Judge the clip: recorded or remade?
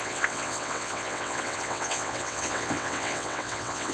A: remade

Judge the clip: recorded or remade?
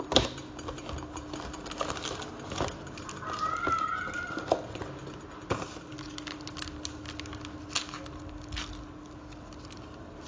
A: recorded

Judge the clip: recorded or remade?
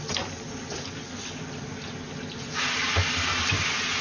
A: recorded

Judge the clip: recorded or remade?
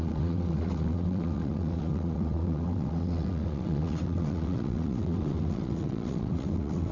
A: remade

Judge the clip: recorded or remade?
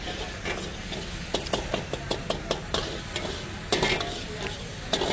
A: recorded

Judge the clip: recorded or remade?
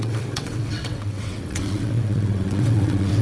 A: remade